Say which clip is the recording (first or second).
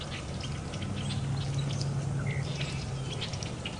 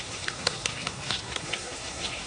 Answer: first